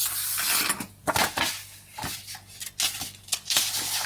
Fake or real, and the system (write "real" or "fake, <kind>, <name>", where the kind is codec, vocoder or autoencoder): real